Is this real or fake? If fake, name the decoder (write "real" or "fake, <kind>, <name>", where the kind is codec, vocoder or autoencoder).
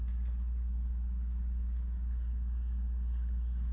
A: real